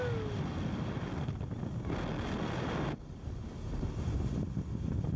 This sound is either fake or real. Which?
real